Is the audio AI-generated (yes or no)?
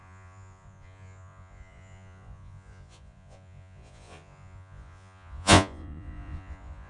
yes